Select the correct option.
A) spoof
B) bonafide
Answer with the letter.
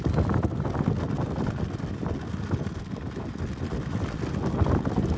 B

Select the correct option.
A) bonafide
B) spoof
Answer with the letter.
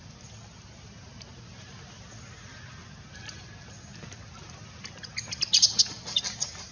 A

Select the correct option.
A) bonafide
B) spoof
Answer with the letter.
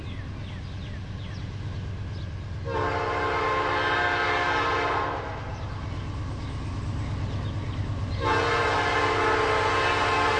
A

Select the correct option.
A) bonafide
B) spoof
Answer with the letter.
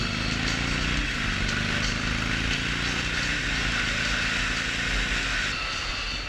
A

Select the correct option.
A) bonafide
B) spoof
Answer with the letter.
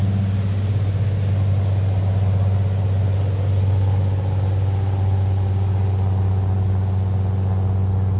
A